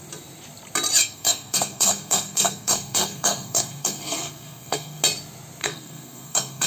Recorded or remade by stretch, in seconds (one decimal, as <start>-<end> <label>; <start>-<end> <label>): 0.0-1.0 recorded; 1.0-5.0 remade; 5.0-5.6 recorded; 5.6-6.7 remade